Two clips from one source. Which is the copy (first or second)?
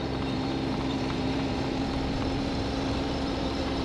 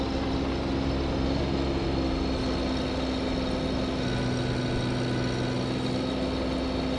first